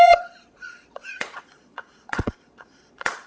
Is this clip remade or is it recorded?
remade